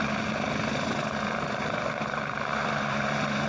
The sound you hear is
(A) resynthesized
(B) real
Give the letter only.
A